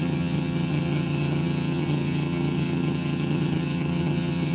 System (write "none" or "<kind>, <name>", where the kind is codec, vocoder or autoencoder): vocoder, HiFi-GAN